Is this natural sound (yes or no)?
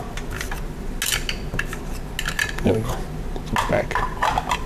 yes